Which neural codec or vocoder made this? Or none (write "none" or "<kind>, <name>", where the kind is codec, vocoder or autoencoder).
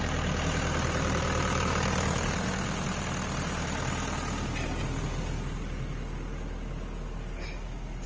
none